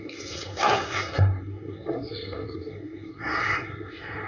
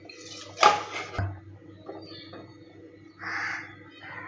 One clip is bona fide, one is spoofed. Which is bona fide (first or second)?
second